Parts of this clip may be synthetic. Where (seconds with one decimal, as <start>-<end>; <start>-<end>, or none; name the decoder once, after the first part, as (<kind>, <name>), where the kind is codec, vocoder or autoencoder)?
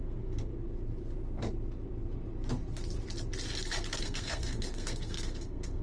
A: 0.0-0.5 (codec, SNAC); 4.0-5.8